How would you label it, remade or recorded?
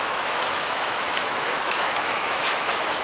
remade